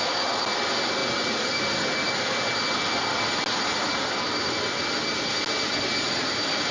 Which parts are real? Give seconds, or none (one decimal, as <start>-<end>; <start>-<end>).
0.0-6.7